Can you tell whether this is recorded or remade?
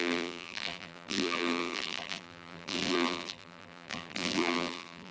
remade